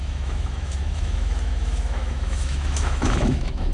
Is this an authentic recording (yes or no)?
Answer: no